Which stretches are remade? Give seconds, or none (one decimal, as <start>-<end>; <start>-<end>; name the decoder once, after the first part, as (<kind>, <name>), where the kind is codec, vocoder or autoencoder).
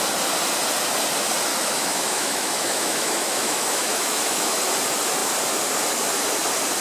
1.5-4.7 (autoencoder, DAC-VAE)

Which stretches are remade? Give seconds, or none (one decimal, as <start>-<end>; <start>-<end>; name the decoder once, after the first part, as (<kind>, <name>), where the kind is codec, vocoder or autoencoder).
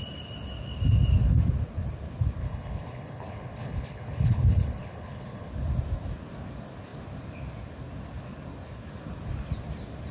2.4-5.5 (codec, HILCodec)